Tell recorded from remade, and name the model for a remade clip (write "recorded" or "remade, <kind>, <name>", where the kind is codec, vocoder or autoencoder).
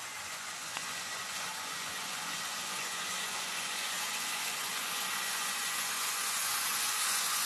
remade, vocoder, Vocos